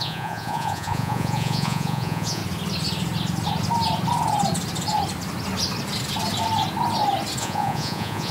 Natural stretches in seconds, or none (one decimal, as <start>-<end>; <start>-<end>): 2.4-7.4